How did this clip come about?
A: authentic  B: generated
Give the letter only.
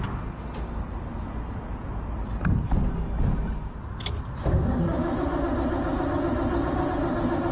A